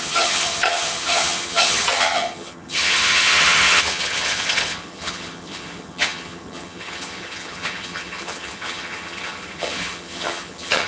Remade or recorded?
remade